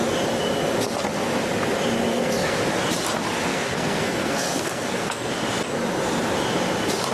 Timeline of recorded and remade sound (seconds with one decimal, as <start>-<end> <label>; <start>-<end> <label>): 0.0-2.1 recorded; 2.1-2.6 remade; 2.6-3.5 recorded; 3.5-5.3 remade; 5.3-7.1 recorded